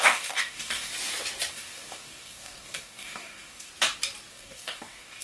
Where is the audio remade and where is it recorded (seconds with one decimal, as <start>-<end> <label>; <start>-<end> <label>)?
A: 0.0-0.9 remade; 0.9-1.5 recorded; 1.5-3.7 remade; 3.7-4.3 recorded; 4.3-5.2 remade